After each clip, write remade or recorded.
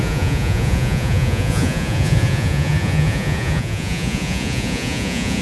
remade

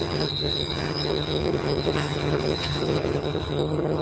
remade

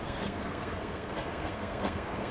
remade